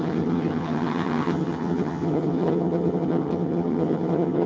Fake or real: fake